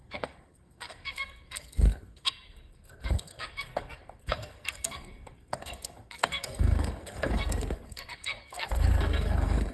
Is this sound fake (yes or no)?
yes